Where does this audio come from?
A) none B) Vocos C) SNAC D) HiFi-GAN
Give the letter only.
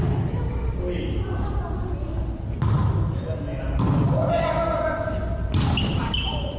A